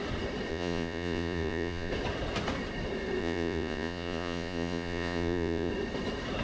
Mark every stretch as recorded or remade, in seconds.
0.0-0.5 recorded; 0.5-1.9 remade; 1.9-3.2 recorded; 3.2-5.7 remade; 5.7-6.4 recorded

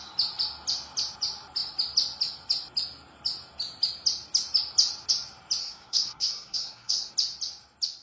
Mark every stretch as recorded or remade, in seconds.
0.0-5.6 recorded; 5.6-7.1 remade; 7.1-8.0 recorded